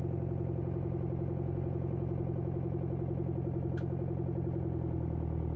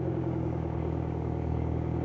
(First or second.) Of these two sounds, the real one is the first